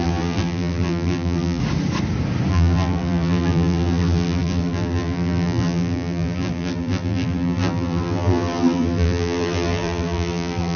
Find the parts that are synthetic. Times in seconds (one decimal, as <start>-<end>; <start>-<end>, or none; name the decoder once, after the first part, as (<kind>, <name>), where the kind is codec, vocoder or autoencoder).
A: 0.0-1.6 (vocoder, BigVGAN v2); 2.5-10.8